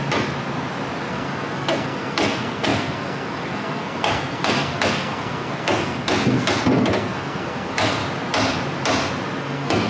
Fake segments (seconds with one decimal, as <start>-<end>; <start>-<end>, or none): 1.1-8.0; 9.4-9.9